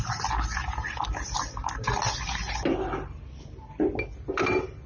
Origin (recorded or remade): recorded